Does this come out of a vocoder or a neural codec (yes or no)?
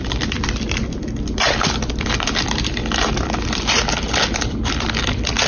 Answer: yes